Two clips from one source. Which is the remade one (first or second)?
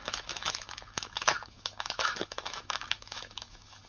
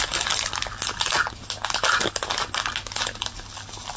first